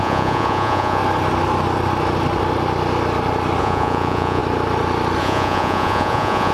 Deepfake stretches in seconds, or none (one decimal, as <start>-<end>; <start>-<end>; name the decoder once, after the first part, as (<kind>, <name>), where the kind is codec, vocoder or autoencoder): 0.0-1.0 (vocoder, Vocos); 3.6-4.4; 5.2-6.5